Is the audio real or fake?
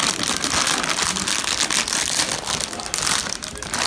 real